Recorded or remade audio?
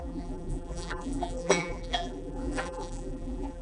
remade